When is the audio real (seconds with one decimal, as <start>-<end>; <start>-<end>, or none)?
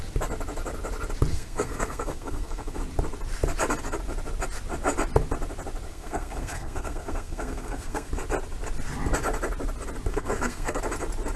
0.0-1.3; 2.8-5.9; 8.1-10.1; 10.8-11.4